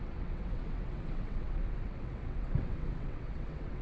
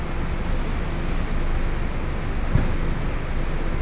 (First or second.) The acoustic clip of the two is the second